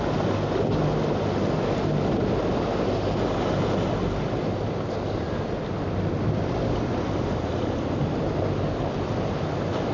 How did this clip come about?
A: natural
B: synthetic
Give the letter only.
A